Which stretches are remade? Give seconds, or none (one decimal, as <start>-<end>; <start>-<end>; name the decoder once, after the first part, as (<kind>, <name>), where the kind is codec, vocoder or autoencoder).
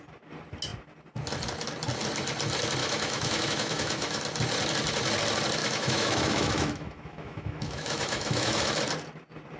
2.8-4.2 (autoencoder, DAC-VAE); 5.6-8.8